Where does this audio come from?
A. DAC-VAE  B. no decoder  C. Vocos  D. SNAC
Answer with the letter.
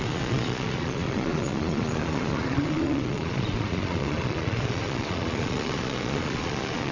C